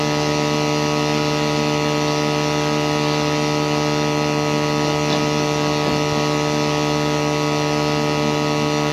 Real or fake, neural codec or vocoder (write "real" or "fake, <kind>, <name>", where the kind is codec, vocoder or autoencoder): real